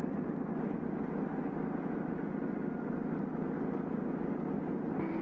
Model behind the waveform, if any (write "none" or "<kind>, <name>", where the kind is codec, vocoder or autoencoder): none